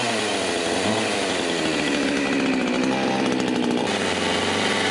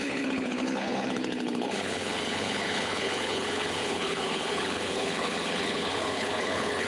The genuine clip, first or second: first